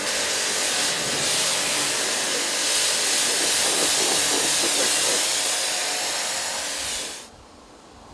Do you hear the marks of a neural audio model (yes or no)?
no